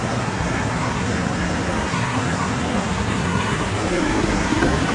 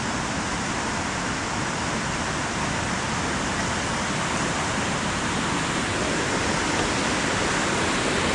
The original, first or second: second